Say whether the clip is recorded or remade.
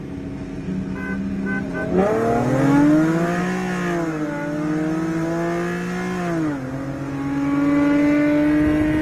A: recorded